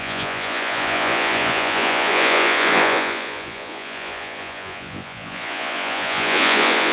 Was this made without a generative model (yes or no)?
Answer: no